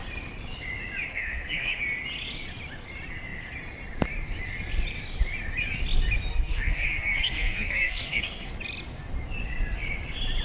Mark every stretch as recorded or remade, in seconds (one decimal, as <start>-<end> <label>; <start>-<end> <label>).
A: 0.0-1.1 recorded; 1.1-1.8 remade; 1.8-6.3 recorded; 6.3-8.5 remade; 8.5-10.4 recorded